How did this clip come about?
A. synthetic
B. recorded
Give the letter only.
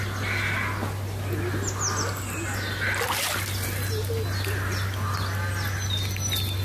B